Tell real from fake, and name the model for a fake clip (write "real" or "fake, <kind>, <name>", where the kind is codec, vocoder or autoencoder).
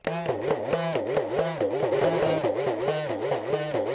real